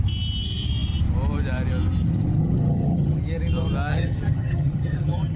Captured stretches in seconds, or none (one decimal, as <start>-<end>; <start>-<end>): 0.0-2.4; 3.2-3.9